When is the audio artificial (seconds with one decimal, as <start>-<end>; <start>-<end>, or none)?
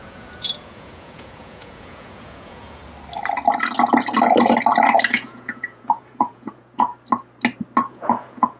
0.0-2.8; 5.1-6.9; 7.8-8.6